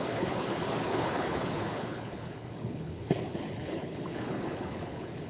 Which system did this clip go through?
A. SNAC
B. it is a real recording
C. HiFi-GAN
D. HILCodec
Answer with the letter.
D